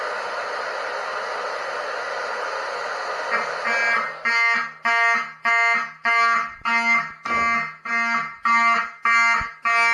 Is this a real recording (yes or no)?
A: yes